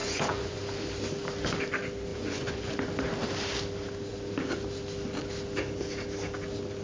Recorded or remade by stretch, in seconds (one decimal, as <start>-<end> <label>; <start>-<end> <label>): 0.0-0.6 remade; 0.6-2.1 recorded; 2.1-2.7 remade; 2.7-6.8 recorded